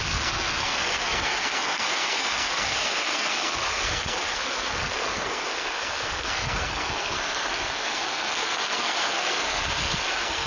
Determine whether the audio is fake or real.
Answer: fake